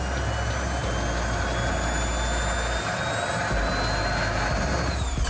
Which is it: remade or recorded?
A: recorded